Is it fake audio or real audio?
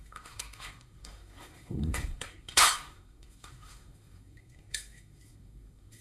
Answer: fake